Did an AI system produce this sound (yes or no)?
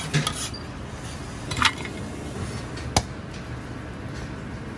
no